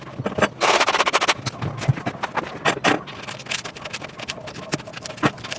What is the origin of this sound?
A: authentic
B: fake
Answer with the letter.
A